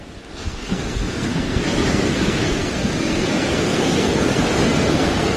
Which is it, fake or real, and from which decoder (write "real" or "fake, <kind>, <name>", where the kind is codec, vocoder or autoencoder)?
fake, codec, SNAC